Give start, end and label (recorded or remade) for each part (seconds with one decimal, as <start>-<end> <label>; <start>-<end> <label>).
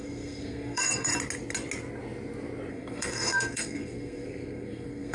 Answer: 0.0-1.1 remade; 1.1-2.7 recorded; 2.7-5.1 remade